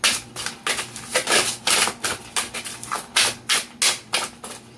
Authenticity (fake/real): real